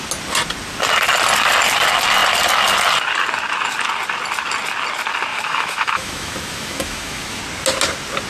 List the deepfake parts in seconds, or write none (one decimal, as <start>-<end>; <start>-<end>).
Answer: 5.3-7.4